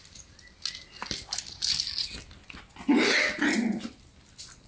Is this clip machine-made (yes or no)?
no